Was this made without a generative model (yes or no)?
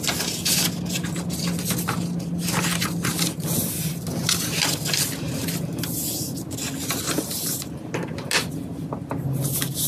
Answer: yes